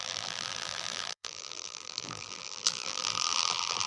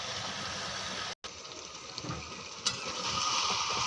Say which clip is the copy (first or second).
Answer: first